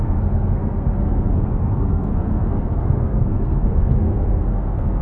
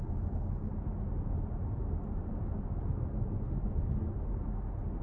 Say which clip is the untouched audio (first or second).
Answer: second